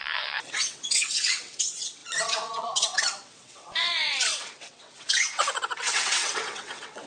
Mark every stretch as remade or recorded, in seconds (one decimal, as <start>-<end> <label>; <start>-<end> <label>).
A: 0.0-7.1 remade